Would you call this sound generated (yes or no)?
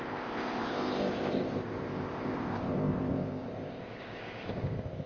yes